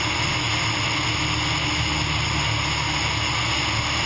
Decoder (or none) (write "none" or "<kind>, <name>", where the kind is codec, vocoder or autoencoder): none